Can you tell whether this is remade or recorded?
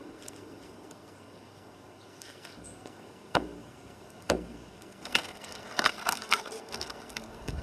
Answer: remade